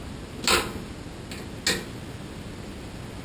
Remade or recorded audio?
recorded